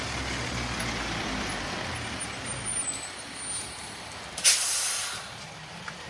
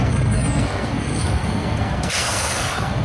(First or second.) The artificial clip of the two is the second